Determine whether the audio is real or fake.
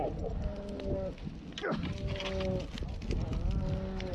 real